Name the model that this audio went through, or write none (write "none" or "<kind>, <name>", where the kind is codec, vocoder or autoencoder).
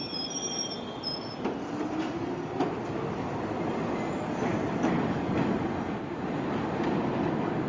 none